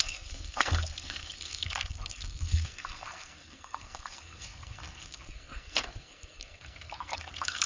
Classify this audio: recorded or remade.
remade